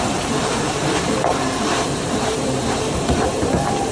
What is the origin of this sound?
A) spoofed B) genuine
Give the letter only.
A